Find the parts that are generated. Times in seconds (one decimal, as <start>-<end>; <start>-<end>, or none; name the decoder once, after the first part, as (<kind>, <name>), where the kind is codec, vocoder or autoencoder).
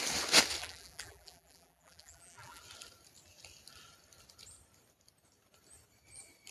0.6-2.6 (vocoder, BigVGAN v2)